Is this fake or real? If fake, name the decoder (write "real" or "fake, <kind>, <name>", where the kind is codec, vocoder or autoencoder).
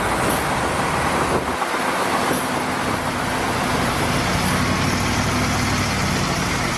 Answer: real